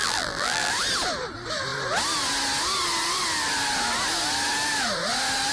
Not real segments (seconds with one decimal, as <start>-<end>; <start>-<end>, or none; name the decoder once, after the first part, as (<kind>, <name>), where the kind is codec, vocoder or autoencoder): 0.0-0.7 (vocoder, BigVGAN v2)

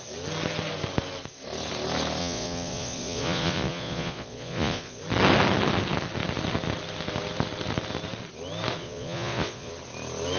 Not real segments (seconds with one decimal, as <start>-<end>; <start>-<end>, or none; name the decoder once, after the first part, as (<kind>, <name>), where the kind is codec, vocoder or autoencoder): 2.2-5.0 (vocoder, Vocos); 8.8-9.7

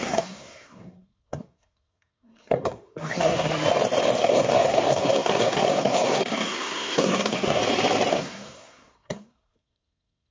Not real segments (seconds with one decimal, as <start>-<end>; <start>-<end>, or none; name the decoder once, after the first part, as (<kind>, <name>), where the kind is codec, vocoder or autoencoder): 0.0-3.5 (codec, SNAC); 4.2-7.6; 8.1-10.3

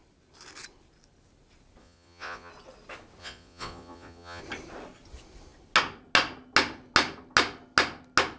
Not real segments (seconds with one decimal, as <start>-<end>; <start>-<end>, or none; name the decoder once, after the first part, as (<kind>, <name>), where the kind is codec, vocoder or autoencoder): 1.8-2.5 (vocoder, Vocos); 3.2-4.4

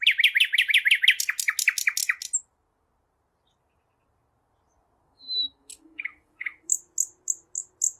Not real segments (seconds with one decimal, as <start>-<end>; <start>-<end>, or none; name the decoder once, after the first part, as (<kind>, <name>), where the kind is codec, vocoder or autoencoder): 5.0-6.8 (autoencoder, DAC-VAE)

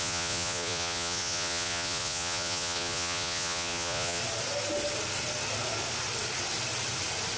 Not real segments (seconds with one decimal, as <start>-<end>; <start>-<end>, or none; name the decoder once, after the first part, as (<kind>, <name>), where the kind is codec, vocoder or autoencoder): 0.0-4.2 (vocoder, Vocos)

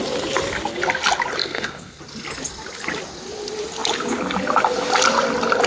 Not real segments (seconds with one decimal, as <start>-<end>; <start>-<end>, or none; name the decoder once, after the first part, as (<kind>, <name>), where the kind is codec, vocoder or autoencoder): 1.4-2.0 (codec, SNAC)